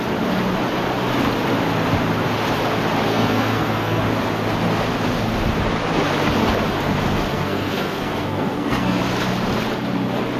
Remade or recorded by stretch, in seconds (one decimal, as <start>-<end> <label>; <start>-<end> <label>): 0.0-3.1 recorded; 3.1-4.0 remade; 4.0-7.3 recorded; 7.3-9.0 remade; 9.0-10.4 recorded